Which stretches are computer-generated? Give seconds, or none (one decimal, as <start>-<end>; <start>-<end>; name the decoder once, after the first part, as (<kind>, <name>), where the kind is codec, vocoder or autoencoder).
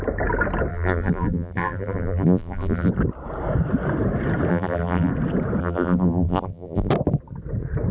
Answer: 0.7-2.9 (vocoder, BigVGAN v2); 4.5-5.1; 5.6-6.9